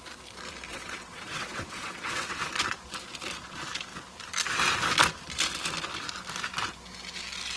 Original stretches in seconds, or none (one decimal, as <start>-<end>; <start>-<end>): 0.0-0.7; 2.5-7.6